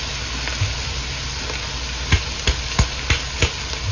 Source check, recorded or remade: recorded